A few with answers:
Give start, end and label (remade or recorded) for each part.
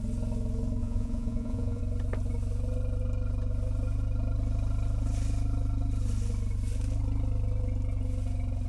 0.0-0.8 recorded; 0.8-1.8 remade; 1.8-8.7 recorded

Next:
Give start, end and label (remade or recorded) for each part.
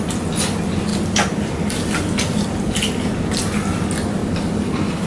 0.0-5.1 recorded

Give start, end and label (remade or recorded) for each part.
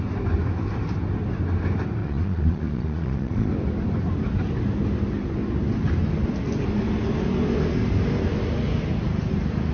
0.0-2.0 recorded; 2.0-3.5 remade; 3.5-9.7 recorded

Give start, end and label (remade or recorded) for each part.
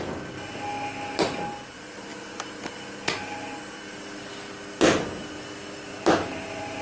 0.0-6.8 recorded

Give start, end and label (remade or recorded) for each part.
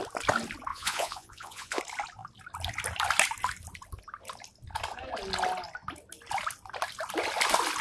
0.0-0.7 recorded; 0.7-1.8 remade; 1.8-7.8 recorded